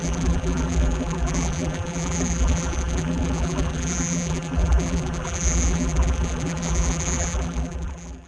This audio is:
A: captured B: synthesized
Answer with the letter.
B